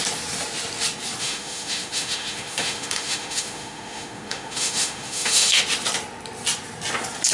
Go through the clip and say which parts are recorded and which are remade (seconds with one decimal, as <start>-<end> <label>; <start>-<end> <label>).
0.0-1.2 recorded; 1.2-5.6 remade; 5.6-7.3 recorded